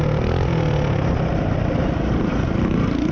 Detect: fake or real real